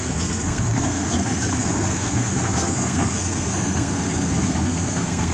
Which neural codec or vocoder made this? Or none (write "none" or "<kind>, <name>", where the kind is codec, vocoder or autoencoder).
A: codec, SNAC